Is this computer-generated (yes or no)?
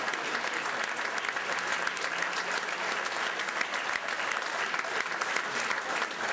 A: no